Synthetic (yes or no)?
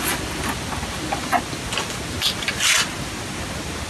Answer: no